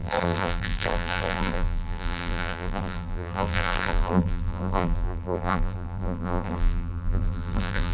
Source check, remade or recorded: remade